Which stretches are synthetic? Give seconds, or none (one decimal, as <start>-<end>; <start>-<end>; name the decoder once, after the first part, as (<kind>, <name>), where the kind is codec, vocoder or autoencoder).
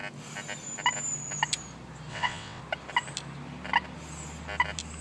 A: 2.1-2.6 (vocoder, WaveNeXt)